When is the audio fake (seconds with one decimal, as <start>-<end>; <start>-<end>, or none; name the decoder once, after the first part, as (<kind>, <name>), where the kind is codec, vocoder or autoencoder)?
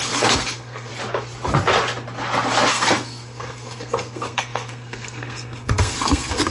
0.0-0.9 (codec, SNAC); 2.7-6.5